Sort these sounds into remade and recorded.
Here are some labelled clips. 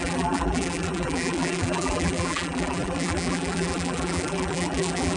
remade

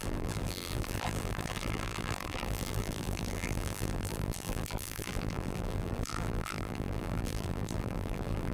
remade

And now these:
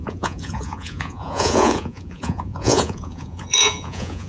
remade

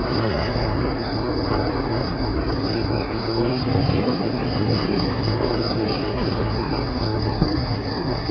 remade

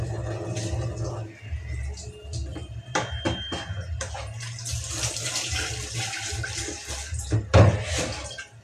recorded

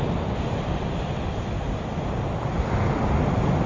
recorded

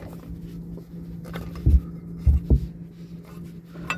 recorded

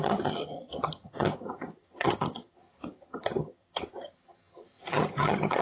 remade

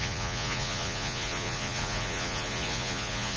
remade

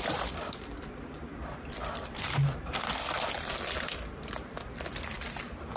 remade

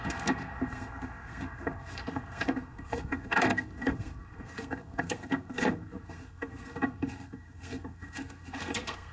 remade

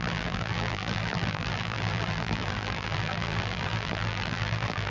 remade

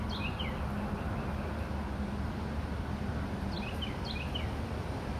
recorded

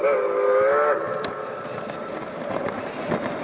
recorded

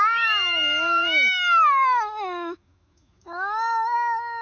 remade